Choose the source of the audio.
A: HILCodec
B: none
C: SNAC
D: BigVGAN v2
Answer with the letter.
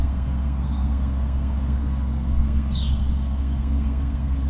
C